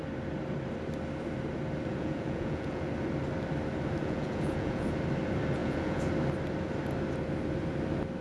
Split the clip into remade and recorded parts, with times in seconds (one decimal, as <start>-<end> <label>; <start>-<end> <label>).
0.0-1.9 recorded; 1.9-2.9 remade; 2.9-4.0 recorded; 4.0-4.9 remade; 4.9-5.6 recorded; 5.6-6.1 remade; 6.1-8.2 recorded